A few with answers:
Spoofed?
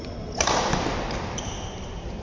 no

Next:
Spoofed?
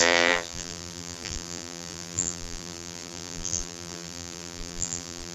yes